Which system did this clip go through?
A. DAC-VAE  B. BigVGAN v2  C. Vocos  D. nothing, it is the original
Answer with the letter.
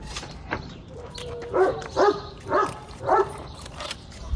B